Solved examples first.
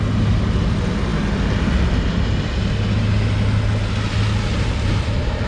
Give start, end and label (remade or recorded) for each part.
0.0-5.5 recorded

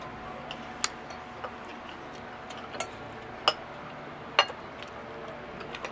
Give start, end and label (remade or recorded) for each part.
0.0-5.9 recorded

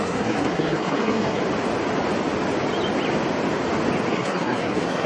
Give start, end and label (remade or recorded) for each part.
0.0-1.4 remade; 1.4-4.1 recorded; 4.1-5.1 remade

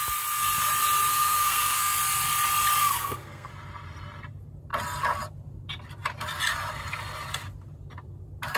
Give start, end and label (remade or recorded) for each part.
0.0-1.1 recorded; 1.1-2.0 remade; 2.0-2.8 recorded; 2.8-3.5 remade; 3.5-8.6 recorded

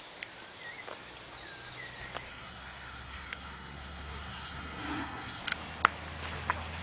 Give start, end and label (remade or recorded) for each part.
0.0-2.3 recorded; 2.3-5.4 remade; 5.4-6.8 recorded